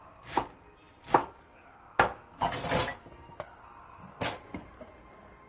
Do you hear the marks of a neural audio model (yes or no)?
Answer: no